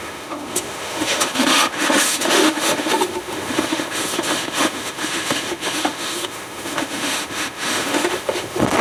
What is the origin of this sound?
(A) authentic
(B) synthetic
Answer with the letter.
B